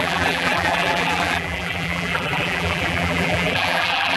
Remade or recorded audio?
remade